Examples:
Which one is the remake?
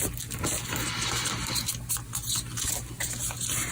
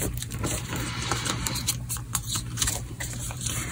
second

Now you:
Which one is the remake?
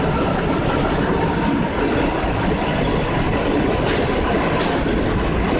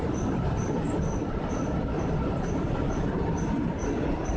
second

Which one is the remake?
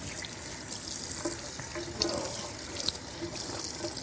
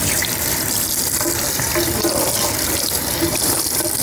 second